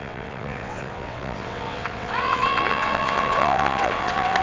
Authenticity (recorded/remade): remade